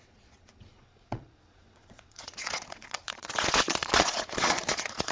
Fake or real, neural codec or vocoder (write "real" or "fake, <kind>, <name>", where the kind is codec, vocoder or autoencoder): fake, vocoder, Vocos